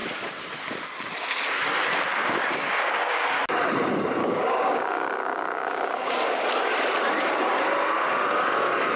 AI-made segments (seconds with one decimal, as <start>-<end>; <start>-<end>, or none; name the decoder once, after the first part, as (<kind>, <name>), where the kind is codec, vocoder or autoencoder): 2.1-3.4 (codec, DAC); 4.2-6.4

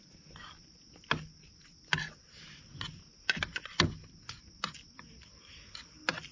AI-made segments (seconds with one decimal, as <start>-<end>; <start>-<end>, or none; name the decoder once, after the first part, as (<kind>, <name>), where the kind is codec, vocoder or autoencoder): none

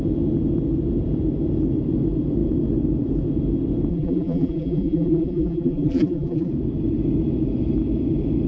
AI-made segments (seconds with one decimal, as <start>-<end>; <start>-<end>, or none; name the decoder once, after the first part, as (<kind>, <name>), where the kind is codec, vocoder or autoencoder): 3.9-6.5 (vocoder, BigVGAN v2)